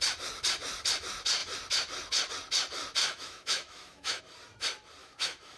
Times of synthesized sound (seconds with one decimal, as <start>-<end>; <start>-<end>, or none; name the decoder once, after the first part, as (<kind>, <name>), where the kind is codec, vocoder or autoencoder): 3.0-4.2 (autoencoder, DAC-VAE); 5.0-5.6

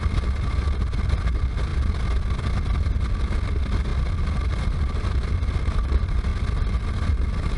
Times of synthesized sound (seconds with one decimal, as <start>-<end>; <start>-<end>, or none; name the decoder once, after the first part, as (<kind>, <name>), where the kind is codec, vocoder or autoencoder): none

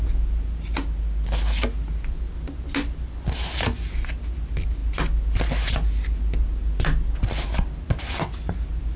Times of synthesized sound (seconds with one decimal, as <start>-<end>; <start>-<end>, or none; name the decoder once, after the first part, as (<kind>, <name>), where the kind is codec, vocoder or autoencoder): none

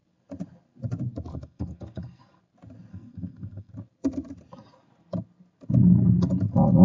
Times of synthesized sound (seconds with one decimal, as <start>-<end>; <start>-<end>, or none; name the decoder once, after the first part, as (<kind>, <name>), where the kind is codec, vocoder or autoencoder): 1.3-2.4 (codec, SNAC); 2.9-3.7

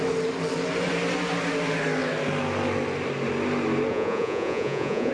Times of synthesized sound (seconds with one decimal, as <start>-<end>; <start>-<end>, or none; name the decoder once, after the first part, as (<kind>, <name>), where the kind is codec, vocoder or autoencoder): 3.9-5.1 (vocoder, Vocos)